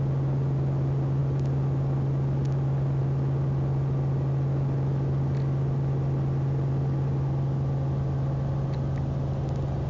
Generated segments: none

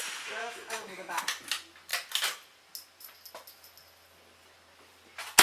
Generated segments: 0.4-1.2 (autoencoder, DAC-VAE)

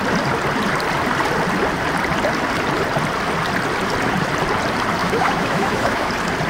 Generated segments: 5.0-6.1 (autoencoder, DAC-VAE)

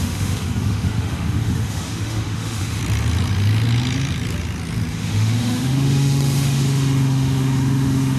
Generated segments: 0.0-2.8 (autoencoder, DAC-VAE); 4.9-8.2

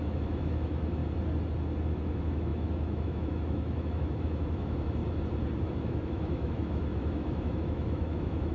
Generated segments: 0.0-1.0 (autoencoder, DAC-VAE); 1.9-5.0; 5.6-8.5

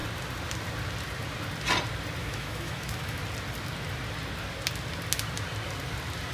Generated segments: 2.2-3.2 (autoencoder, DAC-VAE)

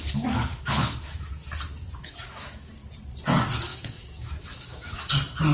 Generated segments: 0.5-1.3 (autoencoder, DAC-VAE); 2.0-2.7; 3.7-5.1

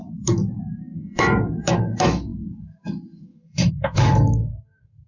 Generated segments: 0.0-5.1 (autoencoder, DAC-VAE)